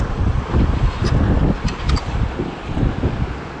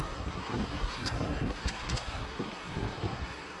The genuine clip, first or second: first